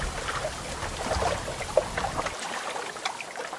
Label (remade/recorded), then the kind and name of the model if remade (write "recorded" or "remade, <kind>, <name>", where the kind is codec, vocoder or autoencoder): recorded